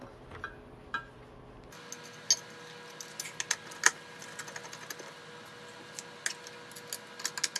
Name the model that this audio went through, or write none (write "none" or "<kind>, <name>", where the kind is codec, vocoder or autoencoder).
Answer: none